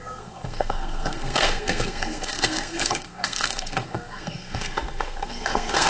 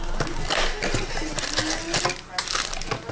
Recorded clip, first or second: second